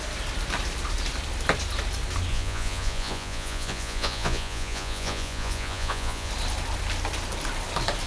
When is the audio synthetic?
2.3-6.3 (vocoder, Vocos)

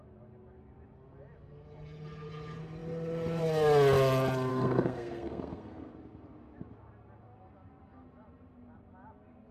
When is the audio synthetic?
4.5-5.9 (codec, SNAC)

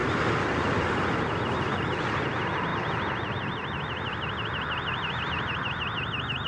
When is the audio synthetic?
none

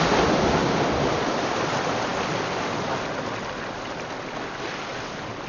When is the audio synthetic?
none

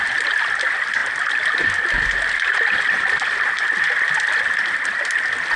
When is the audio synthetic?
none

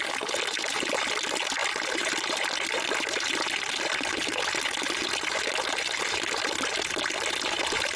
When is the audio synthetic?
none

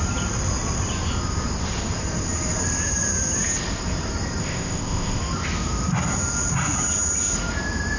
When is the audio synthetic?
4.4-5.2 (codec, ZipCodec)